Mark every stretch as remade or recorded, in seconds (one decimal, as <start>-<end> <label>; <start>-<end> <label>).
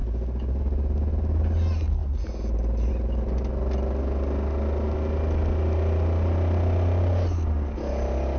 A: 0.0-8.4 recorded